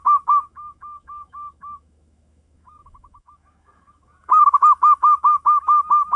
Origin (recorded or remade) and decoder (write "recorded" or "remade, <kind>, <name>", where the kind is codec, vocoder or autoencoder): remade, autoencoder, DAC-VAE